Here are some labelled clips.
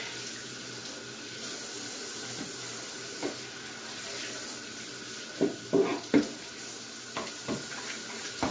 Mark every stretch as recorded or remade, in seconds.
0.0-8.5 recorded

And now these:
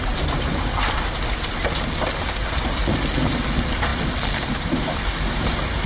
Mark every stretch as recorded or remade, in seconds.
0.0-5.9 recorded

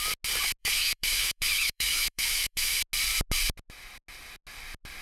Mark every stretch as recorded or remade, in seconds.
0.0-0.6 recorded; 0.6-2.8 remade; 2.8-5.0 recorded

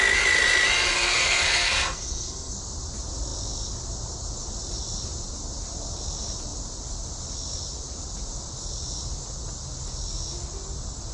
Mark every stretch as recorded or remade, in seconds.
0.0-0.9 recorded; 0.9-2.6 remade; 2.6-11.1 recorded

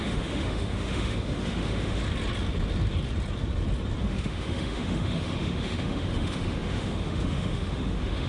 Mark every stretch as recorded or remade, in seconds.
0.0-2.0 remade; 2.0-4.0 recorded; 4.0-8.3 remade

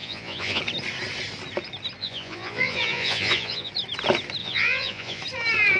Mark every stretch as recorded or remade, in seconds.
0.0-0.6 remade; 0.6-2.0 recorded; 2.0-3.7 remade; 3.7-4.4 recorded; 4.4-5.2 remade; 5.2-5.8 recorded